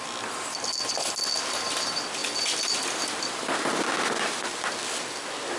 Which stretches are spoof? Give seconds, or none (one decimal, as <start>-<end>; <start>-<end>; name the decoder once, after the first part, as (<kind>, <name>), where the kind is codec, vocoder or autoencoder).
none